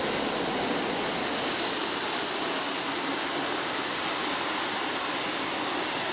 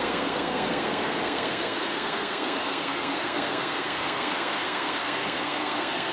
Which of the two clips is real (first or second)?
first